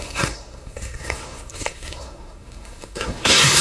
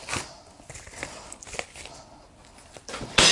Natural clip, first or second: second